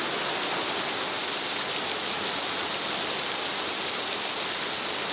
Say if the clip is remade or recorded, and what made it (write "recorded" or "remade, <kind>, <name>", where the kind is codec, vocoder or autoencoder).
recorded